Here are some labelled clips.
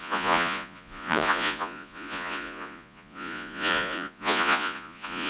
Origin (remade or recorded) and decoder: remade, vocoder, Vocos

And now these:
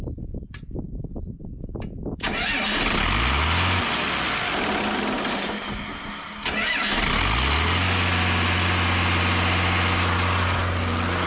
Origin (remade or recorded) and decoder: recorded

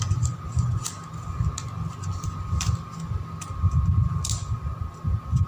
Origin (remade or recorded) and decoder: recorded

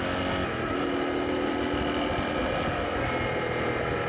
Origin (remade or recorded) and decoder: recorded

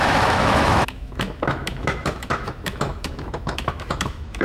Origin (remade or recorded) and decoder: remade, autoencoder, DAC-VAE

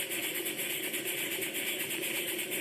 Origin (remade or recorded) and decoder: recorded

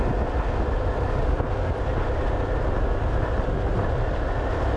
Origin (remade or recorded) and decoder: recorded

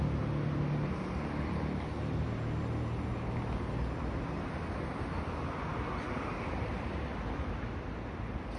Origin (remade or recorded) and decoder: recorded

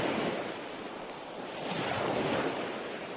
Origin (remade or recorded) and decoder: recorded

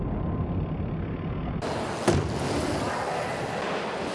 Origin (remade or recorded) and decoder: recorded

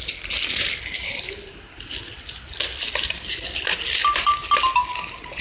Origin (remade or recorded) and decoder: recorded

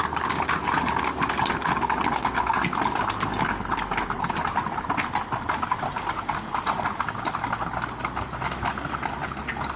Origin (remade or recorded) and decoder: recorded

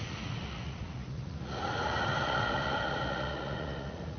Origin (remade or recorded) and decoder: remade, vocoder, Vocos